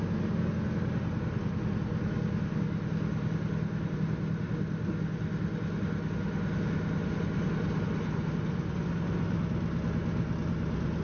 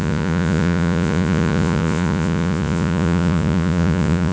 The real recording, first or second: first